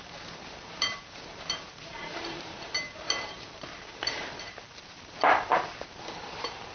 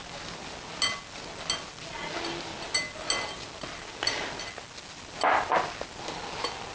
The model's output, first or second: first